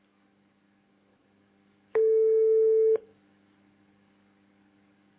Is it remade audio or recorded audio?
remade